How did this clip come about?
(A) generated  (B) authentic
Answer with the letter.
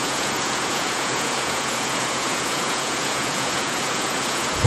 A